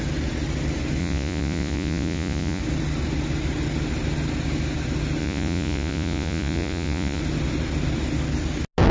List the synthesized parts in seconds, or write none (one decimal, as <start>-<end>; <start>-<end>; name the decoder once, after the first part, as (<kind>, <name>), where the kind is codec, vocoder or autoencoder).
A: 1.0-2.6 (vocoder, Vocos); 5.2-7.2